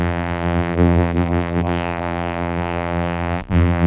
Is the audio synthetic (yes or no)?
yes